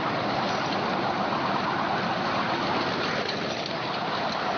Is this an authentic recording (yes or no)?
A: yes